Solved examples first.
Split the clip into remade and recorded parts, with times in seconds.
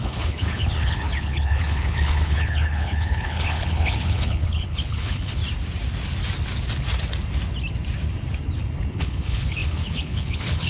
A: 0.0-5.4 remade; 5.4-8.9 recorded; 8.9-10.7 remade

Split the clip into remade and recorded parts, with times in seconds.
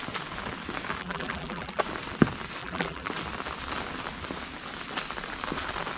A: 0.0-1.0 recorded; 1.0-1.8 remade; 1.8-2.6 recorded; 2.6-3.1 remade; 3.1-6.0 recorded